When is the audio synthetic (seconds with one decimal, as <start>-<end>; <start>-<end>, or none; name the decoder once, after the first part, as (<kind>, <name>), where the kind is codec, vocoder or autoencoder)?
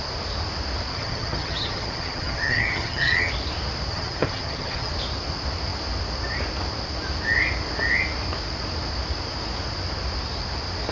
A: 0.9-3.3 (vocoder, HiFi-GAN); 3.9-4.9